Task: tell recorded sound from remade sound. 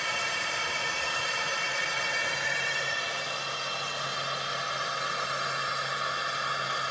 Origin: recorded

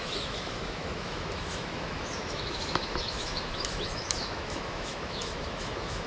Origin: remade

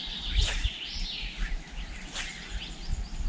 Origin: recorded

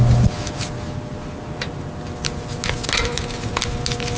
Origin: recorded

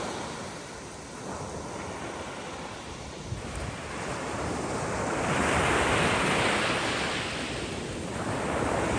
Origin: recorded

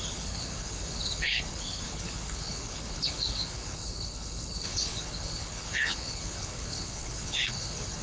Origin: remade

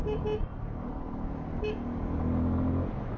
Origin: recorded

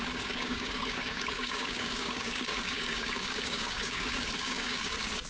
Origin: remade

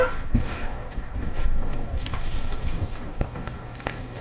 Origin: remade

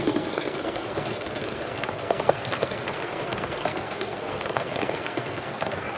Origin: remade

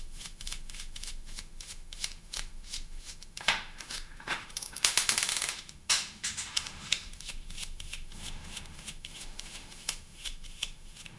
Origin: remade